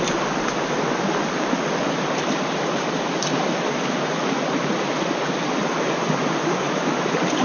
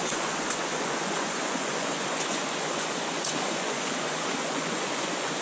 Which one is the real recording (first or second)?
first